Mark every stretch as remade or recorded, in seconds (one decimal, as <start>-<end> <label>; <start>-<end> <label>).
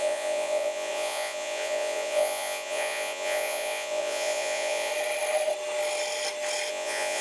0.0-4.9 remade; 4.9-6.7 recorded; 6.7-7.2 remade